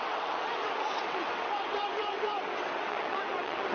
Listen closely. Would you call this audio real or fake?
fake